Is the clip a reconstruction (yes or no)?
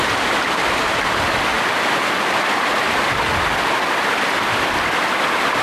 no